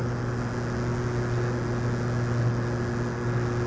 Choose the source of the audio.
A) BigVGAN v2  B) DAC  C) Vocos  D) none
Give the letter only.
D